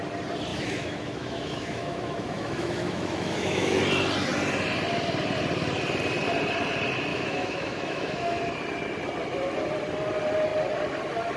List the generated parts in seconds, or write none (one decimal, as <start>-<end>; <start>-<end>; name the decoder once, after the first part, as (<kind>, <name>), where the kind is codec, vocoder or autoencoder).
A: 0.5-3.8 (autoencoder, DAC-VAE); 7.1-8.4